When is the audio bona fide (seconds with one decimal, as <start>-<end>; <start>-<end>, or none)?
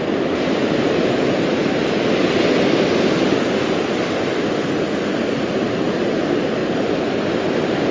0.0-7.9